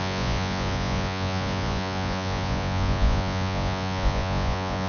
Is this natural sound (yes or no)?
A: no